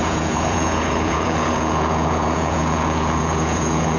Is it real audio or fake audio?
fake